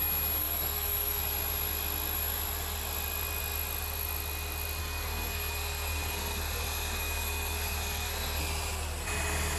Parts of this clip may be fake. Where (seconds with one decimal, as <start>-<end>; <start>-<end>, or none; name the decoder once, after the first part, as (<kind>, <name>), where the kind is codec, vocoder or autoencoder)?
0.4-1.2 (codec, SNAC); 4.8-8.4